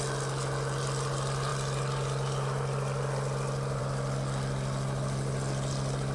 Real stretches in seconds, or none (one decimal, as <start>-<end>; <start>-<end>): 0.0-6.1